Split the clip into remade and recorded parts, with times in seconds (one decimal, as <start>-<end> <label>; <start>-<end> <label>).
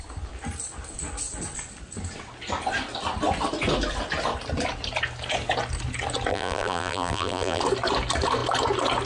0.0-6.3 recorded; 6.3-7.6 remade; 7.6-9.1 recorded